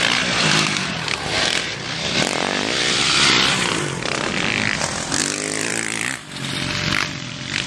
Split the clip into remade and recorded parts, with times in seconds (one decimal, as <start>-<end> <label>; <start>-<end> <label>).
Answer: 0.0-5.2 remade; 5.2-5.7 recorded; 5.7-7.7 remade